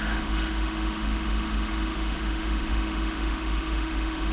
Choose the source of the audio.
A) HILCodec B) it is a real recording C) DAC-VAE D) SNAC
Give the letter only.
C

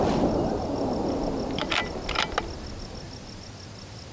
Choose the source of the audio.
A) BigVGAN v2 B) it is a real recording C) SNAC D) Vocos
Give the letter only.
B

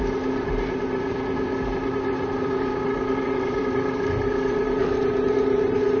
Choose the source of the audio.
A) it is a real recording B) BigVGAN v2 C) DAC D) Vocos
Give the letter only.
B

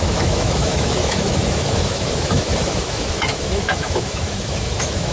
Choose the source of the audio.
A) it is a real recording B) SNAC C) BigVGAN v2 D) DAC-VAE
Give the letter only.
D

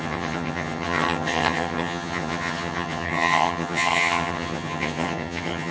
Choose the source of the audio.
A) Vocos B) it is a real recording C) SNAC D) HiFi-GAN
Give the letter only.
D